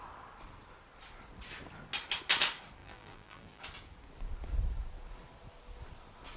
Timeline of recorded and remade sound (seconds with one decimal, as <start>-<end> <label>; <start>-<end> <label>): 0.0-2.8 recorded; 2.8-3.6 remade; 3.6-6.4 recorded

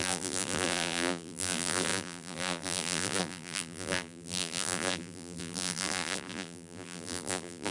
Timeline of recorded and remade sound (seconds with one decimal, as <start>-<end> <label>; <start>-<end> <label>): 0.0-7.7 remade

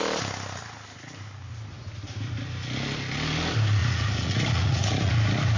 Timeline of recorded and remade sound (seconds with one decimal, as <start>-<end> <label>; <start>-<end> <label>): 0.0-3.8 recorded; 3.8-5.1 remade; 5.1-5.6 recorded

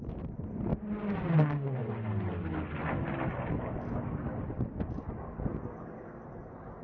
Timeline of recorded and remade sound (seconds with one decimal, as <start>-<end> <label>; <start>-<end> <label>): 0.0-0.7 recorded; 0.7-1.3 remade; 1.3-6.8 recorded